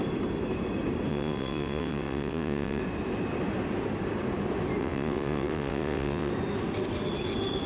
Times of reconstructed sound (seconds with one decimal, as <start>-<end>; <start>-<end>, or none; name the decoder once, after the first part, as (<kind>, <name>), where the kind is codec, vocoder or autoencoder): 1.1-2.8 (vocoder, WaveNeXt); 4.8-6.3